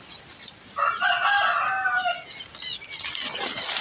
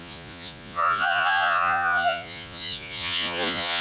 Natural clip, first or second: first